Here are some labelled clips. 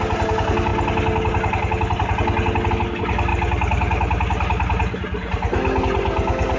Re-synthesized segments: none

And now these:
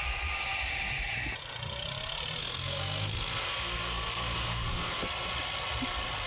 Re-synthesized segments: 2.4-5.1 (codec, SNAC)

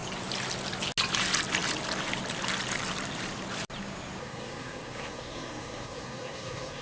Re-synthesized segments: 4.2-6.8 (codec, SNAC)

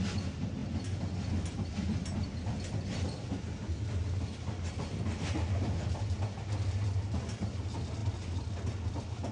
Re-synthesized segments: none

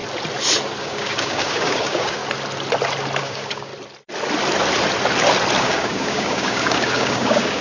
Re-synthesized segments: 0.8-2.2 (codec, DAC); 3.2-3.7; 5.6-7.6